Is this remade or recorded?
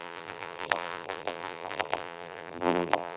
remade